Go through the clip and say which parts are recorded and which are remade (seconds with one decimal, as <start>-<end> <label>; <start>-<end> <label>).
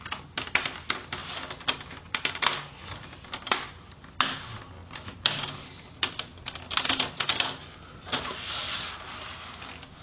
0.0-8.6 recorded; 8.6-9.4 remade; 9.4-10.0 recorded